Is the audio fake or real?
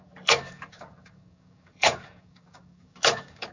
fake